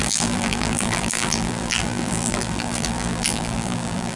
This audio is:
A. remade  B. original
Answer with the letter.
A